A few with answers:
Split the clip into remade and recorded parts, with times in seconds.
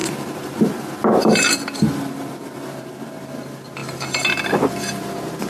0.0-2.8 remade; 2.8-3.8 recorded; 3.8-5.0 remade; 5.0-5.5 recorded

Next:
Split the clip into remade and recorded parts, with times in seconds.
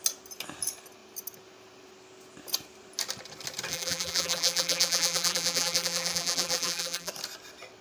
0.0-3.7 recorded; 3.7-7.1 remade; 7.1-7.8 recorded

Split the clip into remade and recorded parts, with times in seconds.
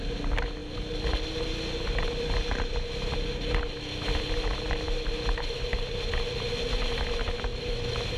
0.0-8.2 recorded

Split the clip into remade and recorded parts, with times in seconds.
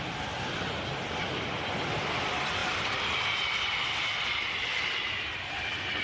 0.0-2.6 recorded; 2.6-3.2 remade; 3.2-6.0 recorded